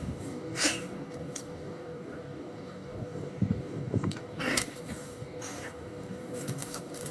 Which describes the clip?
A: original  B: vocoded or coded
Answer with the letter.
B